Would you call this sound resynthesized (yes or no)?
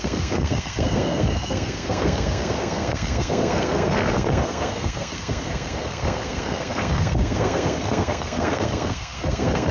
yes